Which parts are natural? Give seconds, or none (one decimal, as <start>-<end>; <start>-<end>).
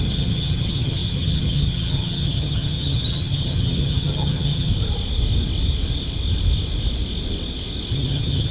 4.7-7.9